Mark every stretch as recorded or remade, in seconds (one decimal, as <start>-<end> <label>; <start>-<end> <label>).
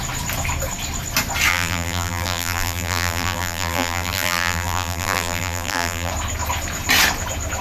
0.0-1.5 recorded; 1.5-6.1 remade; 6.1-7.6 recorded